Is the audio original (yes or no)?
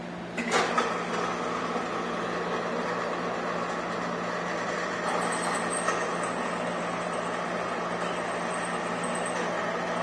yes